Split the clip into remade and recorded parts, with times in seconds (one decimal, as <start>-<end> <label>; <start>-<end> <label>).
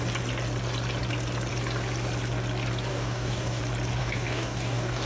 0.0-2.9 recorded; 2.9-3.6 remade; 3.6-4.0 recorded; 4.0-5.1 remade